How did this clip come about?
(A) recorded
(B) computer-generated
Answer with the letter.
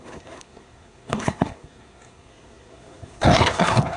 B